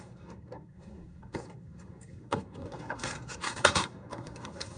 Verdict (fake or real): fake